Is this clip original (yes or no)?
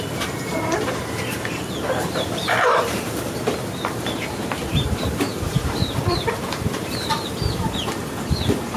no